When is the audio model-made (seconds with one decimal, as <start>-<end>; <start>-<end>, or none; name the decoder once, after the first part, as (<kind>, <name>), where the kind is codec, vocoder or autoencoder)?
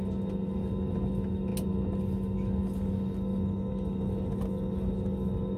none